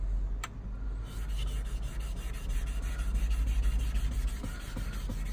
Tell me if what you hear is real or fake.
real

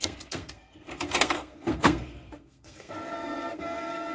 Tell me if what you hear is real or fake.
fake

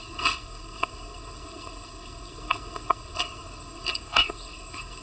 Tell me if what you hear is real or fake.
fake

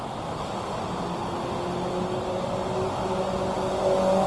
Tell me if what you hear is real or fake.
real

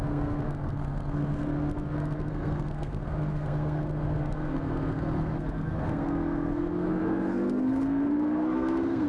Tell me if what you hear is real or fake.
fake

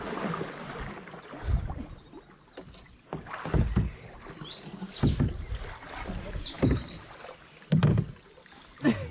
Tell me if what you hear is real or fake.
real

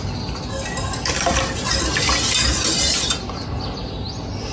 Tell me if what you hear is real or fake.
real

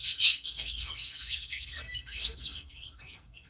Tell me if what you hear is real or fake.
fake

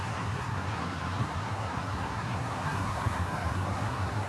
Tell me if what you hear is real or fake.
fake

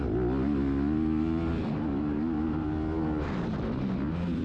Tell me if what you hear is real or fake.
real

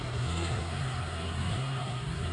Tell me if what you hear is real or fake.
fake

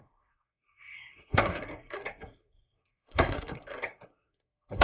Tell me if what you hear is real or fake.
fake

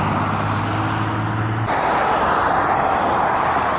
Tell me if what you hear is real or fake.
real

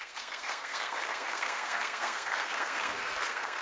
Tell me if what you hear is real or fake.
fake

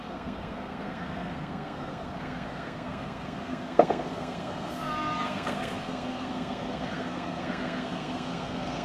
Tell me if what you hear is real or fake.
fake